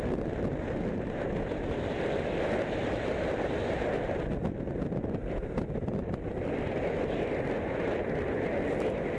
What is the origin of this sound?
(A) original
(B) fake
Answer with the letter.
A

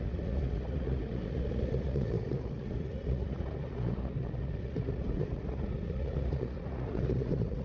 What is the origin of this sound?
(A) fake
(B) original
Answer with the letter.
A